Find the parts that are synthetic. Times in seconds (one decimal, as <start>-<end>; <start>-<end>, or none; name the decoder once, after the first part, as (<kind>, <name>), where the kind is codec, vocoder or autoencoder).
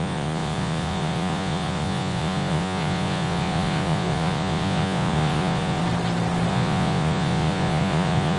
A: 0.0-5.8 (vocoder, Vocos); 6.5-8.4